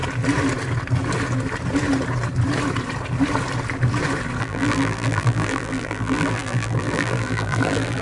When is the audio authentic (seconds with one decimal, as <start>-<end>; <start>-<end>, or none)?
0.0-4.4